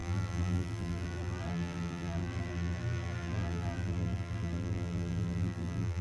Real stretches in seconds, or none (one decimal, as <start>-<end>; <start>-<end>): none